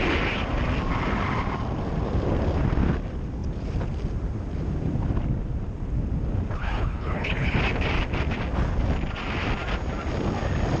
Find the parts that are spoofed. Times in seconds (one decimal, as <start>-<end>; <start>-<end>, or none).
6.6-7.6